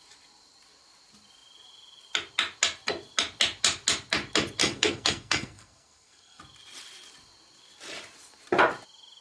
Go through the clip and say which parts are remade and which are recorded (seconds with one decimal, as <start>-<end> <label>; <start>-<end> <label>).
0.0-4.6 recorded; 4.6-6.4 remade; 6.4-9.2 recorded